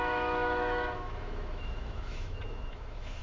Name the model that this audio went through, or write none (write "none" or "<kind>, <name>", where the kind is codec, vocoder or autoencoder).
autoencoder, DAC-VAE